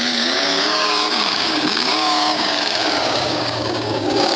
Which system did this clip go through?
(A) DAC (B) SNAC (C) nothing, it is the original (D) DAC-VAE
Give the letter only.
A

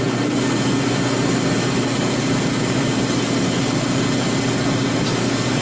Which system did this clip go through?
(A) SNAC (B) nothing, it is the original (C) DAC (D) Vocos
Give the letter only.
B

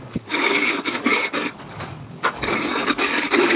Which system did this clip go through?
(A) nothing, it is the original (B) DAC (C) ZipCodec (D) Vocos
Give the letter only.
B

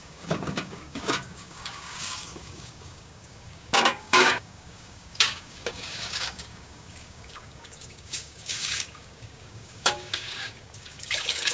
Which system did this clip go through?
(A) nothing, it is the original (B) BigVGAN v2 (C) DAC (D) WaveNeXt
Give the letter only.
C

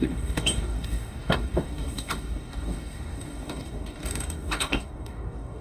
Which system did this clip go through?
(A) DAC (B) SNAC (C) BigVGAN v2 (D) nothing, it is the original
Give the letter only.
A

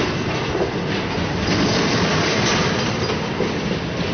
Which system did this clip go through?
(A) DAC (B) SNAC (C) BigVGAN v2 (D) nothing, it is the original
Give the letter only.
D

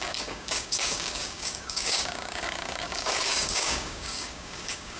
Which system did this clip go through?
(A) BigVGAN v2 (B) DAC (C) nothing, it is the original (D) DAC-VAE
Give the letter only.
B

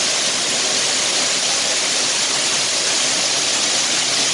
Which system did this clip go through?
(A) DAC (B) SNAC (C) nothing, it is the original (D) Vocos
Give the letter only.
C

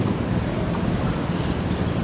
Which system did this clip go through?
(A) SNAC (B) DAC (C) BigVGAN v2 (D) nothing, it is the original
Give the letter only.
D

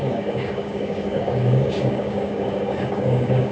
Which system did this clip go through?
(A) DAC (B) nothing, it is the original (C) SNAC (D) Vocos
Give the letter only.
A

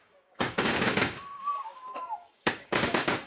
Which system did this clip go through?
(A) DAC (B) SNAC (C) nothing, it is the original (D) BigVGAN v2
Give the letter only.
A